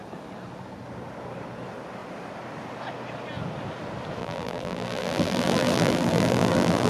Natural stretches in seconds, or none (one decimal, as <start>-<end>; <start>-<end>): 0.0-4.2